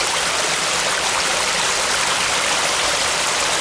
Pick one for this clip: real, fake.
real